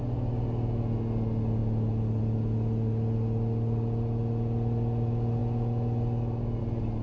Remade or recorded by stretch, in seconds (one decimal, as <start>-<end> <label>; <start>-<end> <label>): 0.0-7.0 recorded